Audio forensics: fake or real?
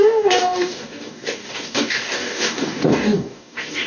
fake